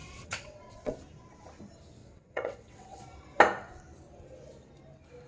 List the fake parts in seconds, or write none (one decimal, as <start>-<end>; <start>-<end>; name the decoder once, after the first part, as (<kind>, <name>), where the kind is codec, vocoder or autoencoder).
0.0-0.9 (vocoder, WaveNeXt); 2.0-3.0